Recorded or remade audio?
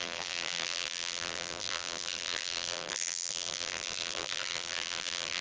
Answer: remade